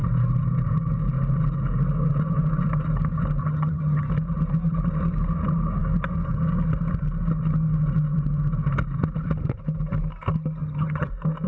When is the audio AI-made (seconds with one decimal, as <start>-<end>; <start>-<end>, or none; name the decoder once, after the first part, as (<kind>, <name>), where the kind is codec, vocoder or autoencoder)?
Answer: 3.4-4.1 (vocoder, HiFi-GAN); 10.6-11.1